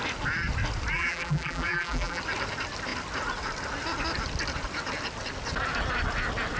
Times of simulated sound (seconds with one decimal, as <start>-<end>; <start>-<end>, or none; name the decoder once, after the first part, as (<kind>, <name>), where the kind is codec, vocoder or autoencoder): 0.9-2.2 (vocoder, BigVGAN v2)